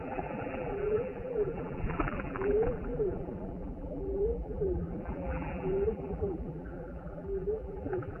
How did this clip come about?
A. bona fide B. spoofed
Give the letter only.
B